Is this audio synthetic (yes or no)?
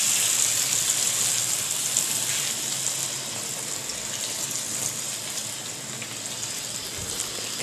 no